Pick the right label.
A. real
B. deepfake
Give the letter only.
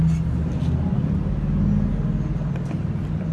A